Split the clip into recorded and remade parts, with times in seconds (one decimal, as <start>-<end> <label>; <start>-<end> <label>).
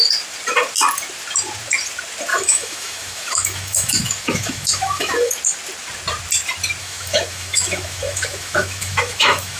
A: 0.0-2.3 recorded; 2.3-5.3 remade; 5.3-6.8 recorded; 6.8-9.6 remade